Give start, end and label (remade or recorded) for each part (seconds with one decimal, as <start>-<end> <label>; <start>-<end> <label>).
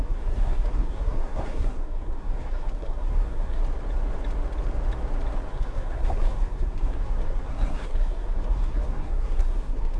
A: 0.0-3.6 remade; 3.6-5.5 recorded; 5.5-10.0 remade